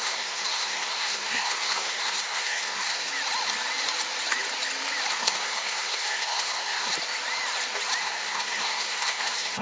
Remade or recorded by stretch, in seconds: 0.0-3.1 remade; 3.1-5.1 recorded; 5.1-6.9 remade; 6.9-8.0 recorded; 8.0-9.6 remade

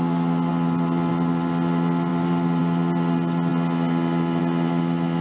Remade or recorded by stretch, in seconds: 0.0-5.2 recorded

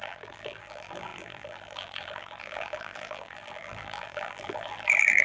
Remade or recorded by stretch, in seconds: 0.0-5.2 remade

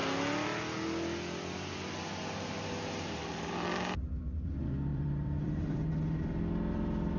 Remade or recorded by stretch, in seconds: 0.0-4.9 recorded; 4.9-5.9 remade; 5.9-7.2 recorded